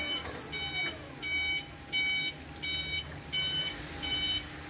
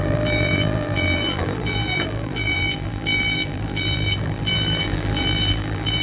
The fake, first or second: second